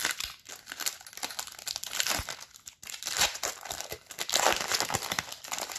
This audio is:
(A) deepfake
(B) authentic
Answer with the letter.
B